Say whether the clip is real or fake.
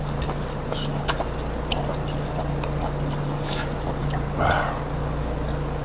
real